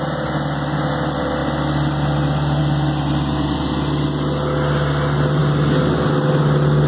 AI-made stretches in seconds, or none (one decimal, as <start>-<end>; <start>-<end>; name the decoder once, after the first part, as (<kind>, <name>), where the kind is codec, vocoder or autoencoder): none